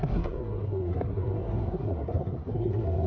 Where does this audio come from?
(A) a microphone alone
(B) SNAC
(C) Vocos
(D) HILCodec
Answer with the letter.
B